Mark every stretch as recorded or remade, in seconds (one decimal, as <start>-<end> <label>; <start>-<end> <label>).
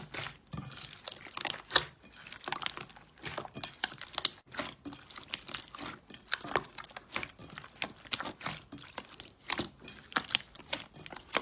0.0-11.4 recorded